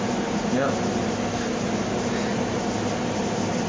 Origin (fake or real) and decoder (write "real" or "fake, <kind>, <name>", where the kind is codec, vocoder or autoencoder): real